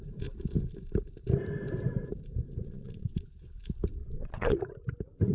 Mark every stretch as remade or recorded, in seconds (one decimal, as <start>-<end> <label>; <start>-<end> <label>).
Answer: 0.0-2.6 recorded; 2.6-3.6 remade; 3.6-4.0 recorded; 4.0-4.6 remade; 4.6-5.3 recorded